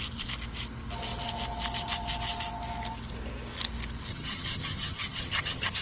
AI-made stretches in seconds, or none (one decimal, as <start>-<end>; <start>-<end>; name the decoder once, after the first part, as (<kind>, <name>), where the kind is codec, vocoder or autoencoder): 4.1-5.8 (vocoder, HiFi-GAN)

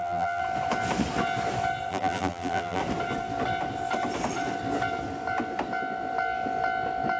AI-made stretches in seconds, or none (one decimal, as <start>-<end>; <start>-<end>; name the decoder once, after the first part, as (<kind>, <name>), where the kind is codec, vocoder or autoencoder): 0.0-0.4 (vocoder, BigVGAN v2); 1.9-2.8

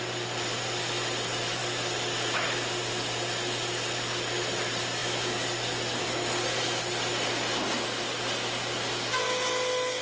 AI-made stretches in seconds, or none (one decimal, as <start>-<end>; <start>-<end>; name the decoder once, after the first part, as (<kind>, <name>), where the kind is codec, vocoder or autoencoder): none

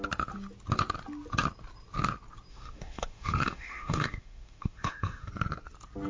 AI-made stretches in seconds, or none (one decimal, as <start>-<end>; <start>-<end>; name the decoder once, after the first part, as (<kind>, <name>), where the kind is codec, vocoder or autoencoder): 2.5-5.3 (autoencoder, DAC-VAE)

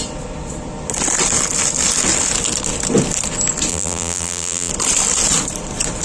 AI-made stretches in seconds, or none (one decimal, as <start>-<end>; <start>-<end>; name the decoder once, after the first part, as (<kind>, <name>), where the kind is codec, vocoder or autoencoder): 3.7-4.7 (vocoder, BigVGAN v2)

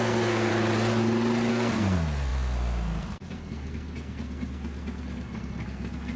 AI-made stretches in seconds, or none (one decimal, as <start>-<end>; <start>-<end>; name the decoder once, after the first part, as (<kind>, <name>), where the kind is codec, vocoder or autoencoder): 0.0-0.5 (codec, SNAC); 1.5-6.2

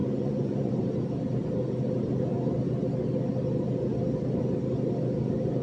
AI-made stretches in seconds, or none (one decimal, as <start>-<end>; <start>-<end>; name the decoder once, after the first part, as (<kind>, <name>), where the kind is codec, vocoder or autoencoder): 0.0-0.7 (vocoder, Vocos)

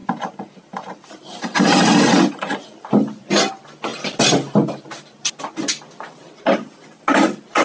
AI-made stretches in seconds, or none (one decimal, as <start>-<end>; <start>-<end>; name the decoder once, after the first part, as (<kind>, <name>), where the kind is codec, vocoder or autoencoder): none